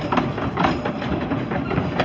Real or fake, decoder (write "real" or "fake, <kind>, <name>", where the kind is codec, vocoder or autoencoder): fake, vocoder, BigVGAN v2